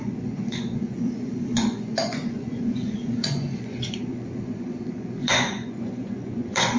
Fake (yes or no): yes